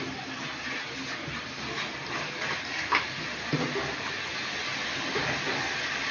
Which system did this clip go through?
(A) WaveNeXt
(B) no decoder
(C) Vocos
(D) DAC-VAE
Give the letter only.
B